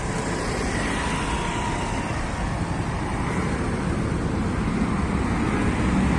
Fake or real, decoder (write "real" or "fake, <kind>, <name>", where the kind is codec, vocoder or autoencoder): real